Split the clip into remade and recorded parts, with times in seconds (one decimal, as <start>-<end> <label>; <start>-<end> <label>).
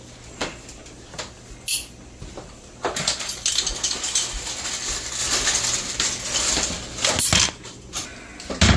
0.0-8.8 recorded